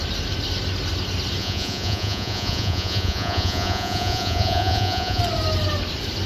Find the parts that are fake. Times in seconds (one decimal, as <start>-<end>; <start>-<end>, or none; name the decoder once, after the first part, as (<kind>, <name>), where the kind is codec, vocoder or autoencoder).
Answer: 1.4-5.2 (vocoder, Vocos)

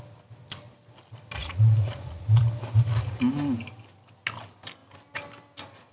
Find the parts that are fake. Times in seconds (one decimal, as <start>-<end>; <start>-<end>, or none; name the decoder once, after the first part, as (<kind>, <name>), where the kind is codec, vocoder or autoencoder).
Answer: 1.4-2.4 (vocoder, Vocos)

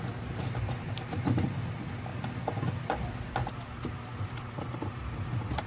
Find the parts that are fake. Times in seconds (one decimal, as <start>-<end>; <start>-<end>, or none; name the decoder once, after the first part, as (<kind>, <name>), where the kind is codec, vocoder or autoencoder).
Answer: none

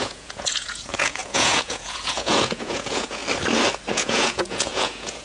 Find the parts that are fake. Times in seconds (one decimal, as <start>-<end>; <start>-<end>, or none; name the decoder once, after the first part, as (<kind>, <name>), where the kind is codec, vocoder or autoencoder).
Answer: 0.0-3.2 (vocoder, Vocos); 3.9-5.2

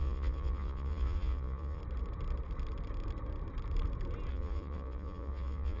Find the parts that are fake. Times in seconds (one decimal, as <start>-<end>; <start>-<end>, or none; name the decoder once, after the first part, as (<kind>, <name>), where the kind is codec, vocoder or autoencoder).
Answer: 0.0-1.8 (vocoder, Vocos); 4.3-5.8

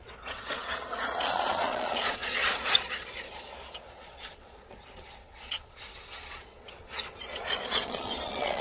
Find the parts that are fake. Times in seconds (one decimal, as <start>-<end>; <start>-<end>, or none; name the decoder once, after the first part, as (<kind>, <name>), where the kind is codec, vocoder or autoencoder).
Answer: 0.0-8.6 (vocoder, Vocos)